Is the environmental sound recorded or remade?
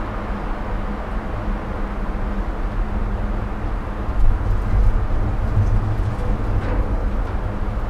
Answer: recorded